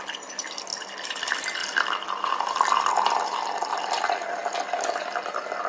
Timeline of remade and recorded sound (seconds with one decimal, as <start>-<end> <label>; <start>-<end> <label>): 0.0-5.7 recorded